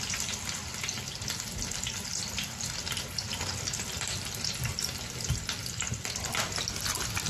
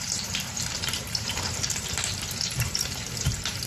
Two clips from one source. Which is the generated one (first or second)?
second